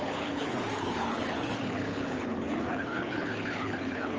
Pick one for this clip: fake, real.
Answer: fake